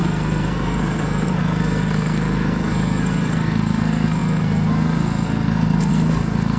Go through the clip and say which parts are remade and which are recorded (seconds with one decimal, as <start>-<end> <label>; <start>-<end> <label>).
0.0-6.6 remade

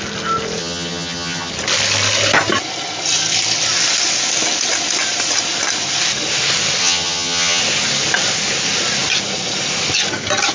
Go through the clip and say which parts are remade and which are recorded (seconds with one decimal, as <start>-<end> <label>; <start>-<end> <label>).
0.0-0.6 recorded; 0.6-1.5 remade; 1.5-6.8 recorded; 6.8-7.6 remade; 7.6-10.5 recorded